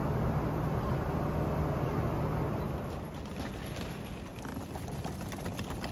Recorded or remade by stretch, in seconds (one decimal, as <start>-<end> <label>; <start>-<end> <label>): 0.0-4.3 recorded; 4.3-5.1 remade; 5.1-5.9 recorded